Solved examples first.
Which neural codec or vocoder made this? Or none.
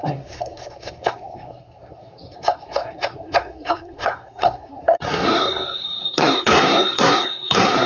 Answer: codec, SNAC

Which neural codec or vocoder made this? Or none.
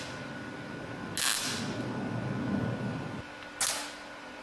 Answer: none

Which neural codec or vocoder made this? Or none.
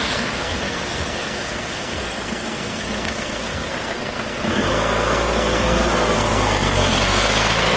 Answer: codec, SNAC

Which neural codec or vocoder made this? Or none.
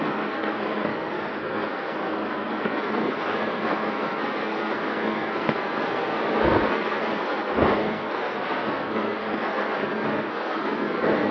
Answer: codec, SNAC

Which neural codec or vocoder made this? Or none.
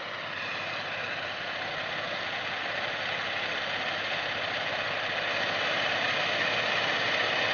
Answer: none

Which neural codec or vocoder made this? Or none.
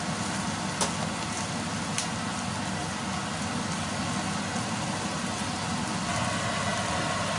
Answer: none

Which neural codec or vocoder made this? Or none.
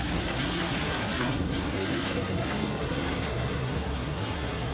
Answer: codec, SNAC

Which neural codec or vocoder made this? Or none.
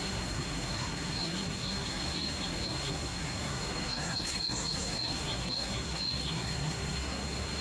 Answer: codec, SNAC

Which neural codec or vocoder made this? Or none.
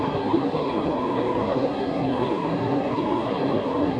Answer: codec, SNAC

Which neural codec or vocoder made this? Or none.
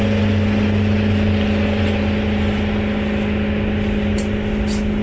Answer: none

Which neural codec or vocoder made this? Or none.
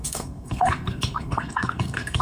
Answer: codec, SNAC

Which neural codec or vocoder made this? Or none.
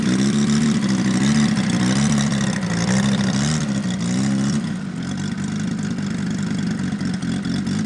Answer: none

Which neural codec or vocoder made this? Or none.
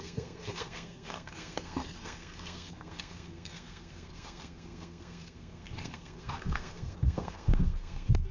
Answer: codec, SNAC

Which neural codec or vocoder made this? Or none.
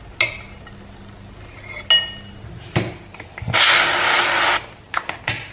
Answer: none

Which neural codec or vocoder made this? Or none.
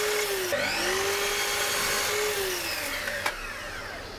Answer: none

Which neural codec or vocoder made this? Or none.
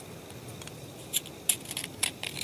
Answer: none